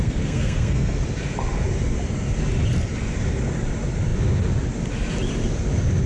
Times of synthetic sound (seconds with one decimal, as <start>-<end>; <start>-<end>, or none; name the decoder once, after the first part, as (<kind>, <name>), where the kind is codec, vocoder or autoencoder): 0.0-1.0 (codec, SNAC)